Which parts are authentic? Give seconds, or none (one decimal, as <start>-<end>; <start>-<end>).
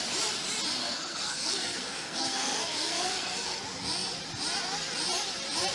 0.0-0.8; 3.6-5.7